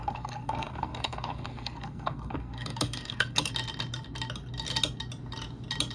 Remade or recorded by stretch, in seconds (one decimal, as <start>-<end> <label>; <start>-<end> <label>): 0.0-3.5 remade; 3.5-5.9 recorded